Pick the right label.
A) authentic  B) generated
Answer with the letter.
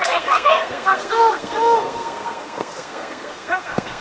B